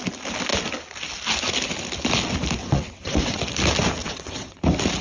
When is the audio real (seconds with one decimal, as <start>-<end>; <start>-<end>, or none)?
0.0-2.6; 3.4-4.0; 4.6-5.0